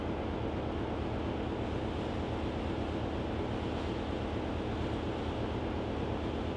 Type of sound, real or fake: real